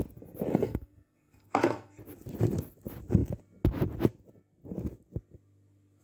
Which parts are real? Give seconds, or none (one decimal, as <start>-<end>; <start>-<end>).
0.0-0.5; 2.0-6.0